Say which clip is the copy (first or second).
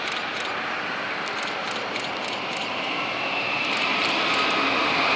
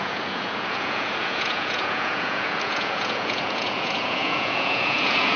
second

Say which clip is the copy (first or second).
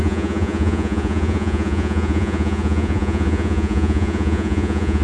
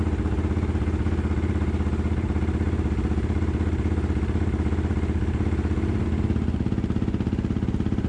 first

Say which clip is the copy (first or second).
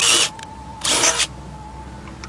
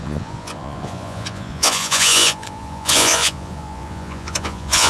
second